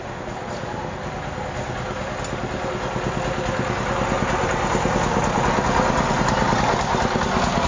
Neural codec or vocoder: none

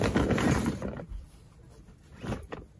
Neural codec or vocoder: none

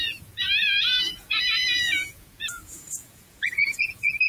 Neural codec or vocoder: vocoder, Vocos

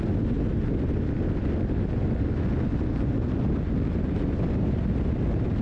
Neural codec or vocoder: none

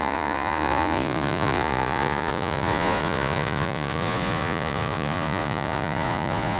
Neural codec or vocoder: vocoder, Vocos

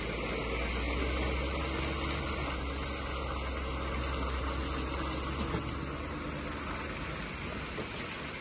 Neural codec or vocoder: none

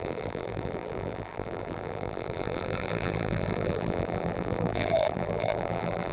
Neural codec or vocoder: vocoder, BigVGAN v2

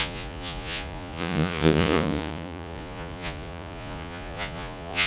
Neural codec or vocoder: vocoder, Vocos